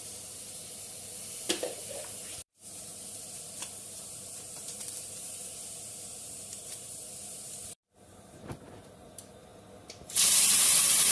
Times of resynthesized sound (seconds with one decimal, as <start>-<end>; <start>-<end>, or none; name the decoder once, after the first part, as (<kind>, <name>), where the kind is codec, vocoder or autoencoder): 0.0-9.5 (vocoder, BigVGAN v2); 10.4-11.1